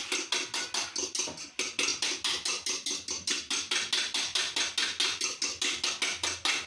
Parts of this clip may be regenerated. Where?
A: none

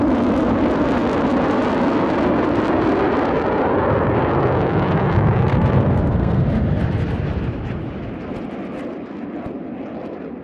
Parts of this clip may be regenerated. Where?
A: 5.4-6.4 (codec, SNAC)